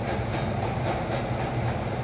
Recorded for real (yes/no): yes